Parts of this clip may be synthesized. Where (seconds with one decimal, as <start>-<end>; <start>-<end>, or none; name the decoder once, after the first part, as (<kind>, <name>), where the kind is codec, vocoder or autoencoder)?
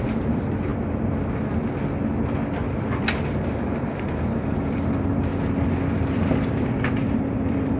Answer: 0.0-0.7 (vocoder, BigVGAN v2); 3.3-5.3; 5.9-7.8